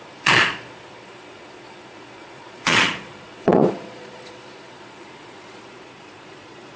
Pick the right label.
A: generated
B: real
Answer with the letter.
A